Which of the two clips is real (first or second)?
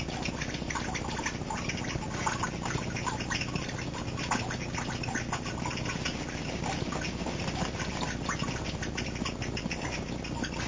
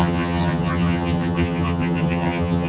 first